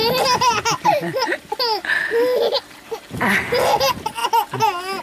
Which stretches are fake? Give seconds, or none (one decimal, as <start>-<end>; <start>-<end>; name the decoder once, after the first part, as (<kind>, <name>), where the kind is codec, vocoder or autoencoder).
none